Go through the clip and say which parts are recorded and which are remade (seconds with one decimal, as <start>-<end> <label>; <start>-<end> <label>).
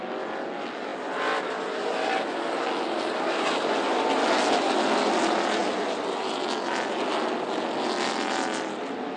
0.0-9.2 recorded